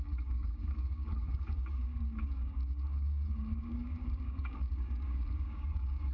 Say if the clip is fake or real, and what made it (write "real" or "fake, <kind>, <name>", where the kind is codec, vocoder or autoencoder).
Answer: fake, codec, DAC